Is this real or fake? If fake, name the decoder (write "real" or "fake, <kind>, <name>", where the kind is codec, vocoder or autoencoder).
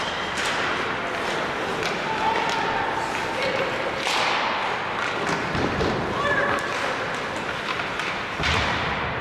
real